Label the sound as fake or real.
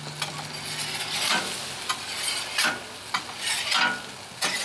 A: real